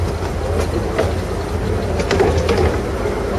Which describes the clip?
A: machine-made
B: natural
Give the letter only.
B